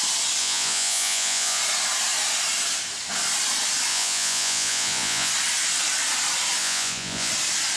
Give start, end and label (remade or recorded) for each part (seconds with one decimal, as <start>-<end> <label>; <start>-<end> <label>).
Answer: 0.0-0.4 recorded; 0.4-1.6 remade; 1.6-3.9 recorded; 3.9-5.3 remade; 5.3-6.6 recorded; 6.6-7.3 remade; 7.3-7.8 recorded